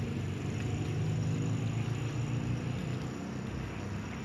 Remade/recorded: recorded